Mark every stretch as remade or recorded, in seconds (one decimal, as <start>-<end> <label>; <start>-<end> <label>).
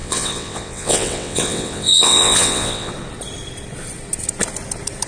0.0-2.9 remade; 2.9-5.1 recorded